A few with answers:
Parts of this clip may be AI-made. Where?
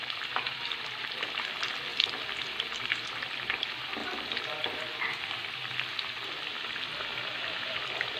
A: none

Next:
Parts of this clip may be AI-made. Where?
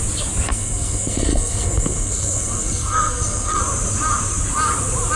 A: 0.5-3.6 (codec, SNAC)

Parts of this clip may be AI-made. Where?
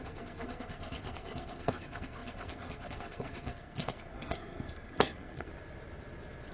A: 0.0-5.5 (codec, SNAC)